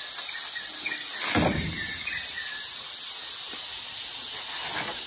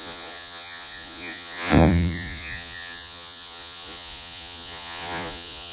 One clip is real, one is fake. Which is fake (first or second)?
second